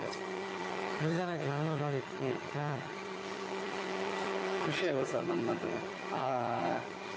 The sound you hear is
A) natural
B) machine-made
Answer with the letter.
B